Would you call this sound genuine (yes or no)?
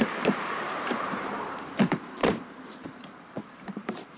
no